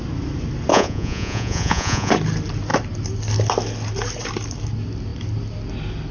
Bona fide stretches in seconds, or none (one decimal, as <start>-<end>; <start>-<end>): 0.0-0.7; 2.1-6.1